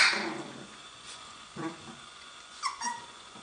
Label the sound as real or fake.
fake